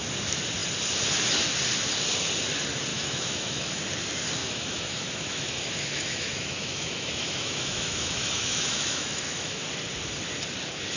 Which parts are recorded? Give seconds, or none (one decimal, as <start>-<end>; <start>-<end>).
0.0-2.9; 3.8-4.4; 9.6-11.0